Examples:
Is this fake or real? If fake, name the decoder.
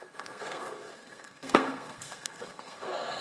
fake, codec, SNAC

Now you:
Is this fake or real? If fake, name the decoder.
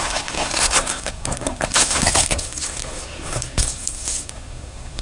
fake, codec, SNAC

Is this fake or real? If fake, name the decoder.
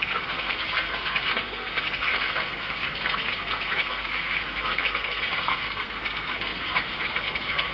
fake, codec, SNAC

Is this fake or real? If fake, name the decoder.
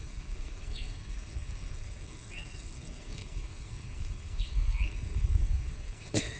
fake, codec, SNAC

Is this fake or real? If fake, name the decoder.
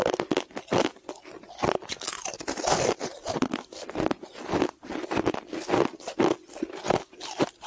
real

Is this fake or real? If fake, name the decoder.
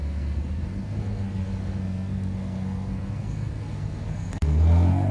fake, codec, SNAC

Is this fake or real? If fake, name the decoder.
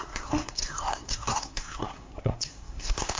fake, codec, SNAC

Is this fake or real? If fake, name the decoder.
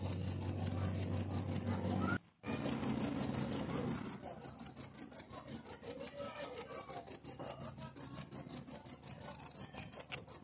real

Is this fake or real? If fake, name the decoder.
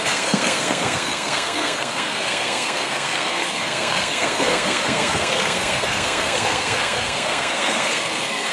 fake, codec, SNAC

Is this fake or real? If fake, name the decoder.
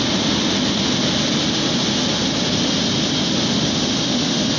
real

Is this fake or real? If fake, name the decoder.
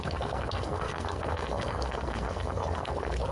fake, codec, SNAC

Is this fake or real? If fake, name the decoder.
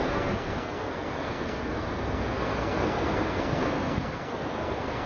fake, codec, SNAC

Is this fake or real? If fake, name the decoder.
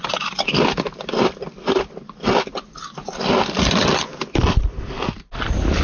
real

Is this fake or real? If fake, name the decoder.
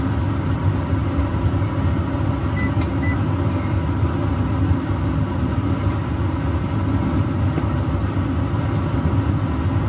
real